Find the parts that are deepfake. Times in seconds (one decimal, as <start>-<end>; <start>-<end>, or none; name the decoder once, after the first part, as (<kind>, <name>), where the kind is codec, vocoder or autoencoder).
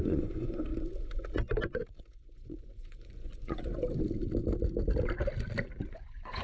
0.0-0.7 (vocoder, Vocos); 2.1-3.6; 5.9-6.4